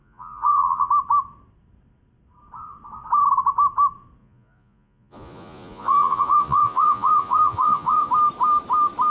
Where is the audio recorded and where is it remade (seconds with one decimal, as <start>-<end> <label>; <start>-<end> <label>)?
0.0-0.9 remade; 0.9-4.2 recorded; 4.2-8.1 remade; 8.1-9.1 recorded